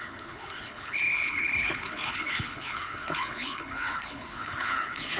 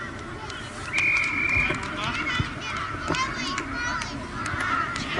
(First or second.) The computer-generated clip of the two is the first